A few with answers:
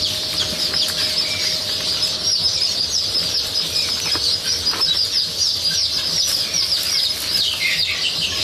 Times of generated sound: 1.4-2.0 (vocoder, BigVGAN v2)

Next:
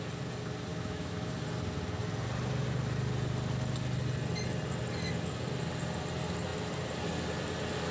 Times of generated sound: 0.7-1.3 (autoencoder, DAC-VAE)

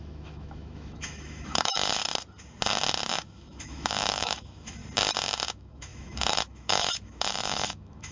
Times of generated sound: 0.0-2.1 (autoencoder, DAC-VAE); 3.1-4.8; 5.5-8.1

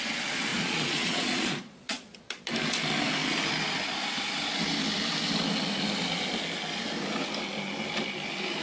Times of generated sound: 0.5-2.5 (vocoder, Vocos)

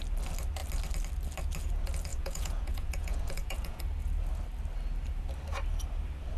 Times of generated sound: 2.1-3.8 (vocoder, Vocos)

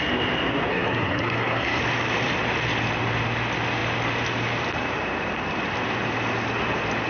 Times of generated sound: 0.7-1.8 (codec, SNAC)

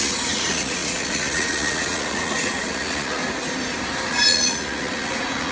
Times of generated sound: 0.0-3.2 (vocoder, Vocos); 4.1-5.5